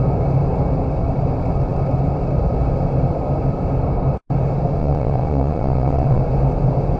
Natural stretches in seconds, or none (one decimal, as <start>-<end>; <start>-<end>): 0.0-4.8; 6.2-7.0